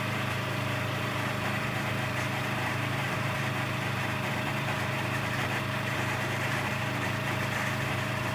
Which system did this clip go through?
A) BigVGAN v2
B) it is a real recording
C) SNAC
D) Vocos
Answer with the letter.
A